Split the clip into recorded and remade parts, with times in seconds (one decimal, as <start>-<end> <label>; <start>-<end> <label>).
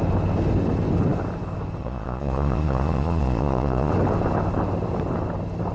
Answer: 0.0-1.8 recorded; 1.8-3.9 remade; 3.9-5.7 recorded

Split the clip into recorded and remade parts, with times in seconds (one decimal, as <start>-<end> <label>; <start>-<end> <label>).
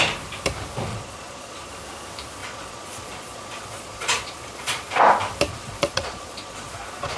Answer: 0.0-0.9 recorded; 0.9-1.7 remade; 1.7-2.4 recorded; 2.4-4.9 remade; 4.9-5.5 recorded; 5.5-7.2 remade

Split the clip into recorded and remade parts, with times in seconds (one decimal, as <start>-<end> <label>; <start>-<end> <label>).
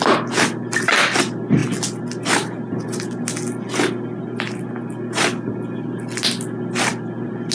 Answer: 0.0-7.5 recorded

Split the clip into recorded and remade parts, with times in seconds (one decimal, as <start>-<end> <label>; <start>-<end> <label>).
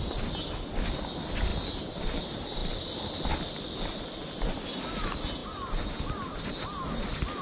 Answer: 0.0-7.4 recorded